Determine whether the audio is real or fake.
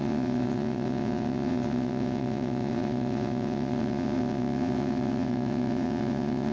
fake